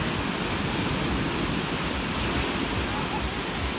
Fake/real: real